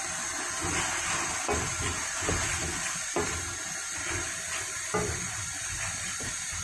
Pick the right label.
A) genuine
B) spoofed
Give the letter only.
A